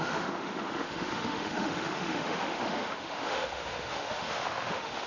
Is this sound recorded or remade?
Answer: remade